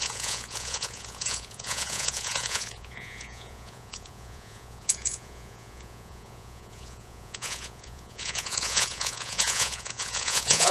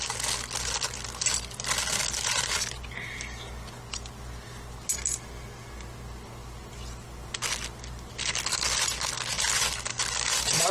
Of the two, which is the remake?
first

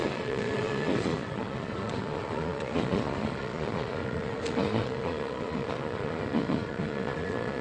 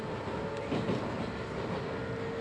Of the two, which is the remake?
first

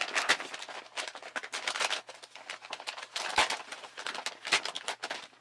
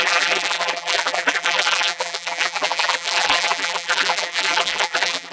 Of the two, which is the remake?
second